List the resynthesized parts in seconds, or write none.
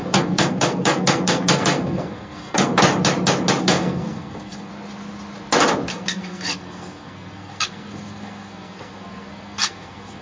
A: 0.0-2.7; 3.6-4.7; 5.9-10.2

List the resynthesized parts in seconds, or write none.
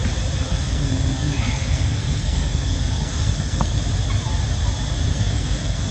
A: 0.5-3.8; 5.1-5.9